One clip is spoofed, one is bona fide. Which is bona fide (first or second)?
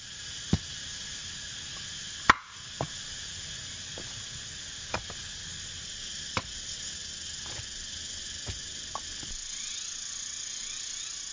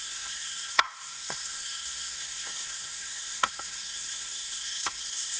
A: first